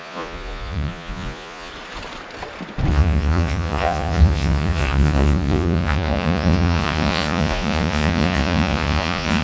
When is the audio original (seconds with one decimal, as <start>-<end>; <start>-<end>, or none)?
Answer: 1.7-2.9